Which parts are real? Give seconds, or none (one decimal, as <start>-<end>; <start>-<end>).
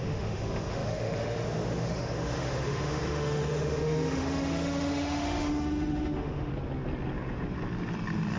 6.5-8.4